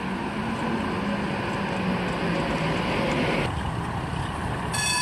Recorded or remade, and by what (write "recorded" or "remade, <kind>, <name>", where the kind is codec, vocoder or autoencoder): recorded